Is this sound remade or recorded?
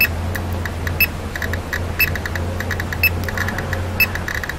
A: recorded